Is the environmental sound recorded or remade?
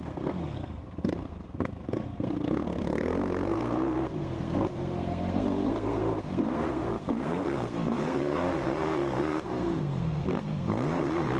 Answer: remade